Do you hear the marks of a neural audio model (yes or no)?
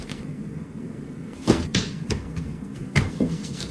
yes